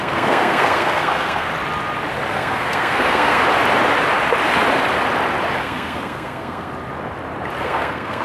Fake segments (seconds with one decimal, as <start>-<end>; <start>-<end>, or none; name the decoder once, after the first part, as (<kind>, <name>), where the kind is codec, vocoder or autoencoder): 0.0-1.5 (codec, SNAC); 2.3-3.4; 5.6-6.7; 7.6-8.2